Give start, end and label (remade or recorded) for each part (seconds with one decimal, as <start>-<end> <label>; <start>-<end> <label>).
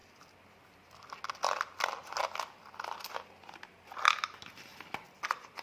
0.0-5.6 recorded